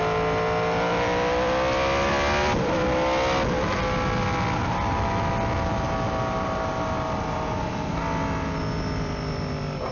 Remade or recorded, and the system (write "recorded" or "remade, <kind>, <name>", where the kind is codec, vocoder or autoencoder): recorded